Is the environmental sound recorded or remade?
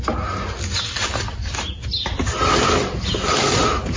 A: recorded